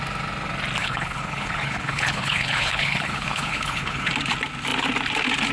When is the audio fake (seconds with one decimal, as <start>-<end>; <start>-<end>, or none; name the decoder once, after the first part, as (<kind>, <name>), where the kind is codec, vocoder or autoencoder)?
0.8-4.1 (codec, HILCodec)

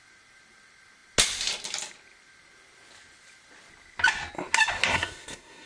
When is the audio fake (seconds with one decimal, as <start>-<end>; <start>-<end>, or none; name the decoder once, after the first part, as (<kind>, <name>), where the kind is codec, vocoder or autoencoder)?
4.9-5.7 (codec, SNAC)

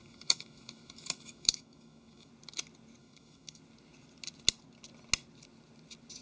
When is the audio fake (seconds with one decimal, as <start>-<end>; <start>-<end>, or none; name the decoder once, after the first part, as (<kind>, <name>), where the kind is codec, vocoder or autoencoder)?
0.0-2.3 (autoencoder, DAC-VAE); 3.0-3.6

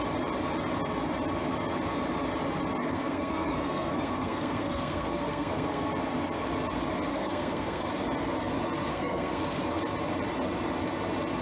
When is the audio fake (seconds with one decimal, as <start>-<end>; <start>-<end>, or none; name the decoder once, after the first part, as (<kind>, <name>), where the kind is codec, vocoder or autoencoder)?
2.8-5.9 (codec, SNAC); 7.1-7.9; 8.9-9.8

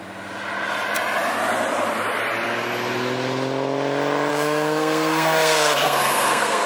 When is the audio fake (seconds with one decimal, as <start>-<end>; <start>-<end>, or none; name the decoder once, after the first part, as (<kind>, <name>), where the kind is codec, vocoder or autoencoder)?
4.3-6.7 (codec, SNAC)